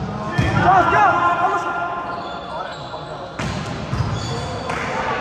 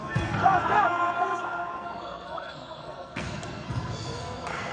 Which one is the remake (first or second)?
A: second